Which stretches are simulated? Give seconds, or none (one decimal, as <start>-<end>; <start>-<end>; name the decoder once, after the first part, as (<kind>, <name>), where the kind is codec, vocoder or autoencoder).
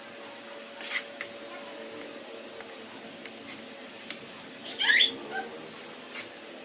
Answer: 3.8-5.1 (vocoder, BigVGAN v2)